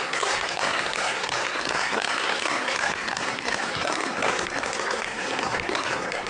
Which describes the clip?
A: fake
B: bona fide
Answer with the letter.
A